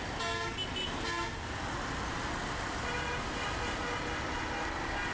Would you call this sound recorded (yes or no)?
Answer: yes